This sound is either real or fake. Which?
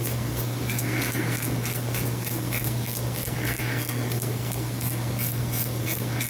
fake